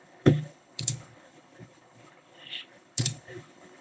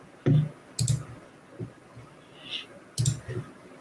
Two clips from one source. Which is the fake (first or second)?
first